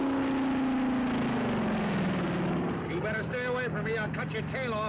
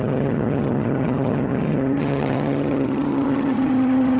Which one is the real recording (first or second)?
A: first